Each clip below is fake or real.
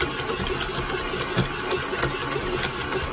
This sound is real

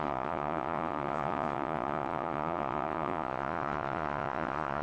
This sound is fake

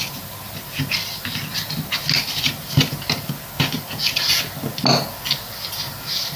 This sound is real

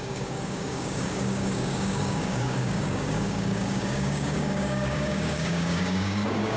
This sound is fake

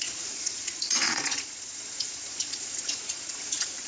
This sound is fake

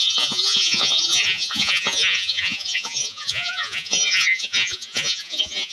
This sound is fake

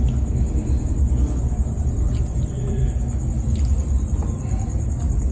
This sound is real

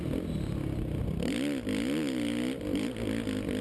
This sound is real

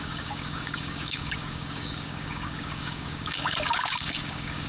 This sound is fake